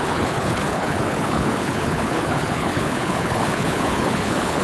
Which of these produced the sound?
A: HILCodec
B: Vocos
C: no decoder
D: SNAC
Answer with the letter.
A